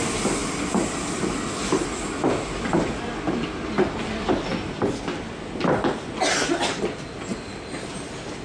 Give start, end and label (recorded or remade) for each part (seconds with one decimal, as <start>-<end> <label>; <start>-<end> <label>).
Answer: 0.0-8.4 recorded